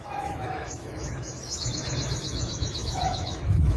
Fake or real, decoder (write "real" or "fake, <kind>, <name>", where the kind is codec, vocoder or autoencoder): fake, autoencoder, DAC-VAE